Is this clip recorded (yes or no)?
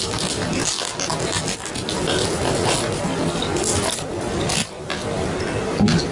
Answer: yes